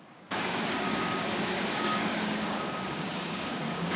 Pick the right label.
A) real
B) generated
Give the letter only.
B